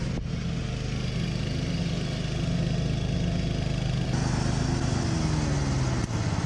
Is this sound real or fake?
real